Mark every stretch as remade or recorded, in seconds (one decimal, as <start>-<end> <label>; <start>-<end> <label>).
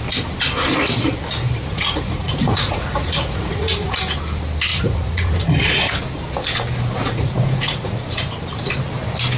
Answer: 0.0-1.7 recorded; 1.7-4.0 remade; 4.0-4.7 recorded; 4.7-6.0 remade; 6.0-7.0 recorded; 7.0-8.1 remade; 8.1-9.4 recorded